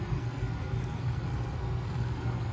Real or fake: fake